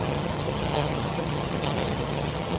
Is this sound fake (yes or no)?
yes